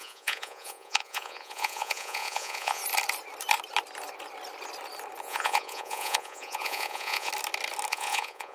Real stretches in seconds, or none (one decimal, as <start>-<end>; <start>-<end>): 2.8-5.2; 7.3-7.9